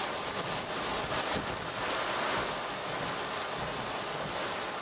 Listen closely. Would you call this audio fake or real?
real